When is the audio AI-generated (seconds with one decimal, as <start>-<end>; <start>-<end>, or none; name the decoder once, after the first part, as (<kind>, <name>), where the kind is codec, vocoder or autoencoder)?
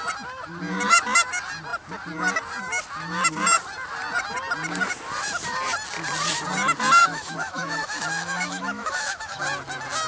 7.0-9.4 (autoencoder, DAC-VAE)